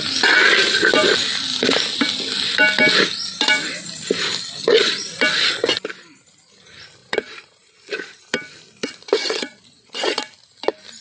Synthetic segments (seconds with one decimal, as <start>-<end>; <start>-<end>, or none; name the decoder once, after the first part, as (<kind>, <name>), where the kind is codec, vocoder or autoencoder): 7.0-8.2 (vocoder, Vocos); 9.2-10.2